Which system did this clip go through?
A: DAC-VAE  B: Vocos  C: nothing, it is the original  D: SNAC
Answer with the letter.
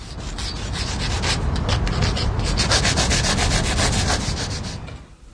C